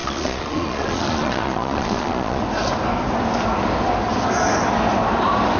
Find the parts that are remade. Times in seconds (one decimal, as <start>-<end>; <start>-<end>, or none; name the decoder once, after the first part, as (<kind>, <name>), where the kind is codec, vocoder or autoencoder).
0.0-2.4 (vocoder, Vocos)